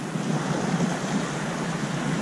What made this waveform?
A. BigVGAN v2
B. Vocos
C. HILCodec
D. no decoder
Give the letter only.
D